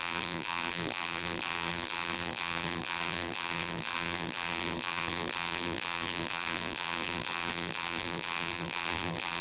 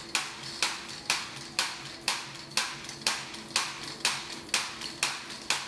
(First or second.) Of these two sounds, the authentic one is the second